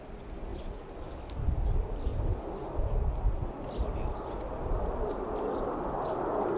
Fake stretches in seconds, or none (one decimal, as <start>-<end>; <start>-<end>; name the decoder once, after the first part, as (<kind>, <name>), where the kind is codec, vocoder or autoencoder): none